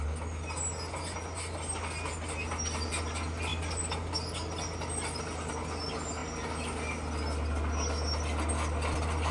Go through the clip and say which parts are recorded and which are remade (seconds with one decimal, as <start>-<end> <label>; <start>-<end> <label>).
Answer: 0.0-9.3 recorded

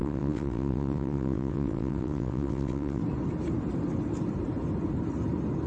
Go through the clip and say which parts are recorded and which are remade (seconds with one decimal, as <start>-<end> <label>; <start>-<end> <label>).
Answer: 0.0-3.0 remade; 3.0-5.7 recorded